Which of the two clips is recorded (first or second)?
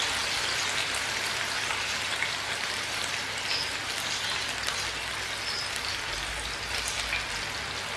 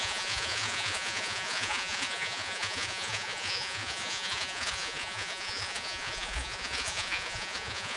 first